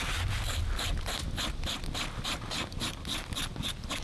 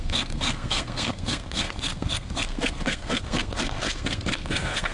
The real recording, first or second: first